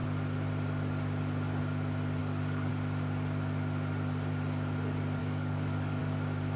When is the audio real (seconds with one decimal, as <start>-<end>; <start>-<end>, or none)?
0.0-2.2; 2.7-5.2; 6.0-6.6